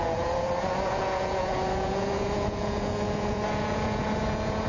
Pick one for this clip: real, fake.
fake